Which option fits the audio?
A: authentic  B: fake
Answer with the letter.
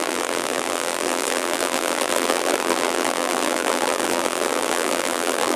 B